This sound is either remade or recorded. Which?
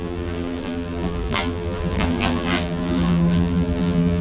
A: remade